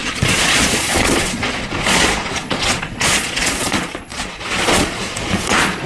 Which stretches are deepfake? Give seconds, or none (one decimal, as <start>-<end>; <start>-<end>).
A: 0.0-5.9